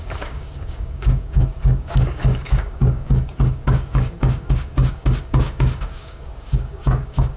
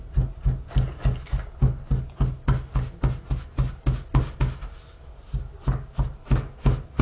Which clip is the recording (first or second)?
second